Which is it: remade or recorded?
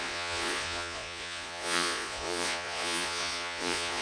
remade